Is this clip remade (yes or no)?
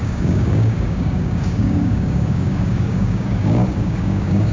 yes